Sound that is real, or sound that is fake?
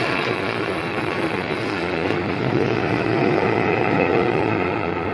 fake